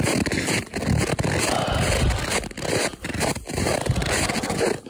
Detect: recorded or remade recorded